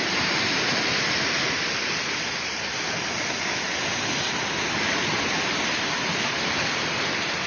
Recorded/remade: recorded